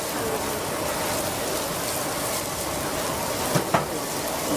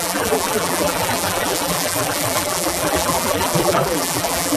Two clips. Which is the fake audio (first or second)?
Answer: second